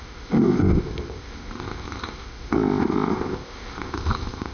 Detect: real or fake fake